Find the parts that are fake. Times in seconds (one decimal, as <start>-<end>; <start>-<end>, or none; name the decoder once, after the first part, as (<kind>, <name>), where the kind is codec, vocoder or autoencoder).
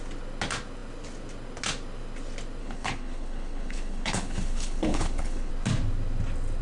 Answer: 2.6-5.5 (codec, HILCodec)